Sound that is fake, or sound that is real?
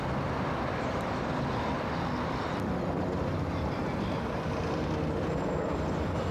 fake